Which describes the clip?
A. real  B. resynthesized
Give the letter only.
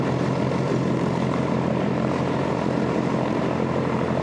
B